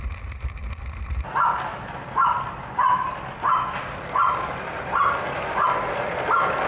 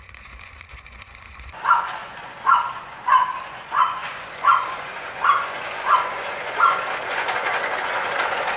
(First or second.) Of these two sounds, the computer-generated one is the second